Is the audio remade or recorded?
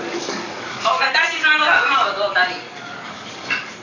remade